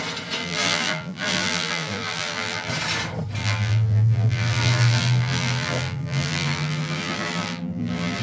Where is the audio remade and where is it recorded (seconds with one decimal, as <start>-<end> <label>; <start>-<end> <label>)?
0.0-0.4 recorded; 0.4-2.7 remade; 2.7-3.4 recorded; 3.4-8.2 remade